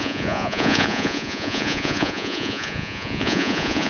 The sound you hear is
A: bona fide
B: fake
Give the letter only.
B